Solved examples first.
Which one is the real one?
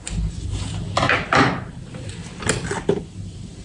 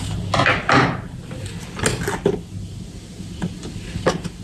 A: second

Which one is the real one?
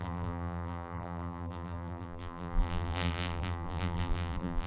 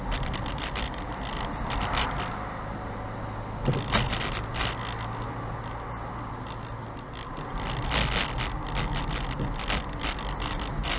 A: second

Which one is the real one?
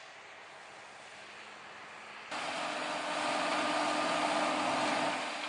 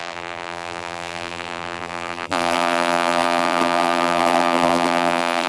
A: first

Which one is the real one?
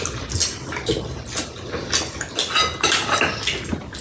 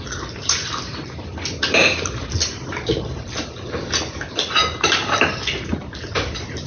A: first